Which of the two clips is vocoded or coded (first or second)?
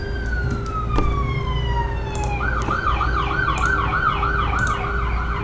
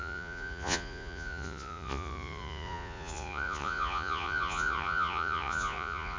second